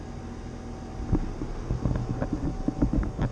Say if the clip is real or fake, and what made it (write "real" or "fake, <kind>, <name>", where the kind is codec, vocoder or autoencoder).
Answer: real